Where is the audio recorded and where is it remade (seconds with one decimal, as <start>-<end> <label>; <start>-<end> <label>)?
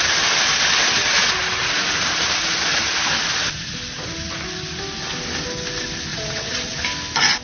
0.0-6.1 recorded; 6.1-6.8 remade; 6.8-7.4 recorded